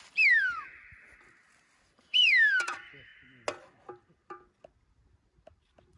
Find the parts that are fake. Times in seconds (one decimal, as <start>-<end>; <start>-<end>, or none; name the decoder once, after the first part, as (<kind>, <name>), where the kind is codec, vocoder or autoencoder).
0.0-3.1 (vocoder, BigVGAN v2); 3.6-6.0